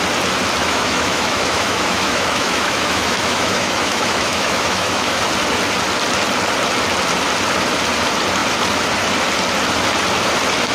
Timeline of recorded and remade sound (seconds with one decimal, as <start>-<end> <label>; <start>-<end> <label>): 0.0-0.6 recorded; 0.6-5.2 remade; 5.2-10.7 recorded